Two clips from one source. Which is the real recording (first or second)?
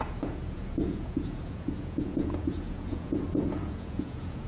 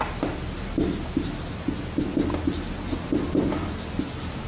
second